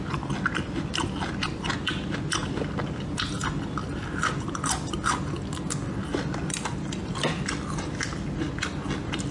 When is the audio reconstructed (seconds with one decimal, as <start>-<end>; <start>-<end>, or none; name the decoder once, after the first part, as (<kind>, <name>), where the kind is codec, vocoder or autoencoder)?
none